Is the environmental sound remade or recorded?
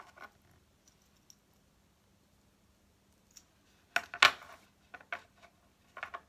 recorded